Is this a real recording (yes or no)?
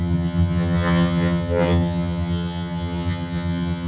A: no